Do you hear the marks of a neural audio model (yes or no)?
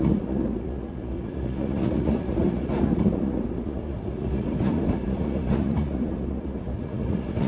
yes